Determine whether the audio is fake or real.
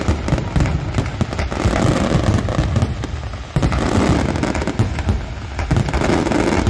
real